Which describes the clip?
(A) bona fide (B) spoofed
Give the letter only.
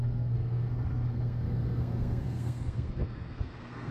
B